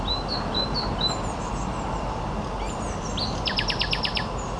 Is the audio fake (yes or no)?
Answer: no